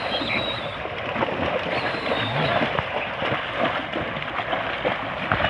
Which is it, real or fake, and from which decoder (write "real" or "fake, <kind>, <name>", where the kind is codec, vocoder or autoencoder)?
real